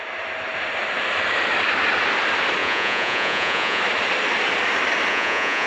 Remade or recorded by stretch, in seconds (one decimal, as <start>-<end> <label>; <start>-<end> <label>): 0.0-2.6 recorded; 2.6-3.8 remade; 3.8-5.1 recorded; 5.1-5.7 remade